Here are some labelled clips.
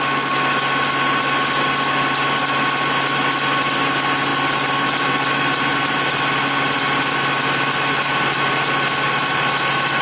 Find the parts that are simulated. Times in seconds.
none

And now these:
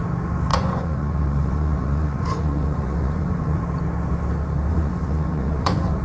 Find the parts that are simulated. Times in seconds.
0.5-3.6 (vocoder, Vocos); 4.7-6.0

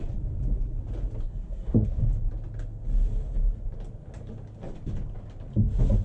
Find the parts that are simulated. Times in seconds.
1.3-2.0 (codec, SNAC)

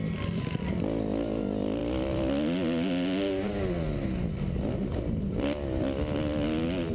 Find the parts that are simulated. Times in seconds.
none

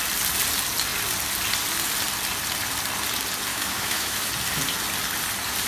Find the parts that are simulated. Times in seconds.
3.5-4.3 (autoencoder, DAC-VAE)

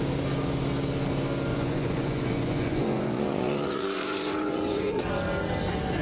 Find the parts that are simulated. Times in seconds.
1.5-5.1 (vocoder, Vocos)

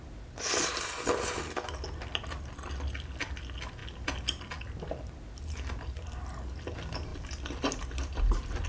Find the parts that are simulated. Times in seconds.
none

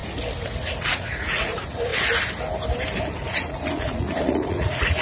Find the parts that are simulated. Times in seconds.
0.6-1.9 (vocoder, Vocos); 3.0-5.0